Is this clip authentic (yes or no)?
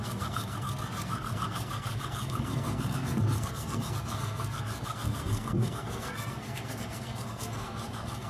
no